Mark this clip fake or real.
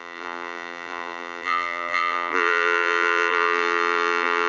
fake